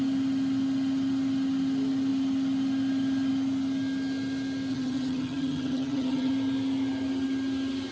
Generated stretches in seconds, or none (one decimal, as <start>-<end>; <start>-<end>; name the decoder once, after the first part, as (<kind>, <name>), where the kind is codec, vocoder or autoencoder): 4.7-6.3 (vocoder, HiFi-GAN)